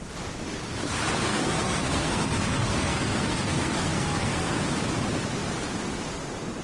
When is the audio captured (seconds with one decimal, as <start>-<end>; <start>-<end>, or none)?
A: 0.0-1.3; 4.6-6.6